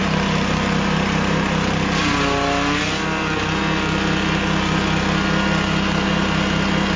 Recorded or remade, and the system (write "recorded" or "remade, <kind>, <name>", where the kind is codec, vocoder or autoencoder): recorded